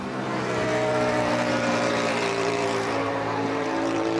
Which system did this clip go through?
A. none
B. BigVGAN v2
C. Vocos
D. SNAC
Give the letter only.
B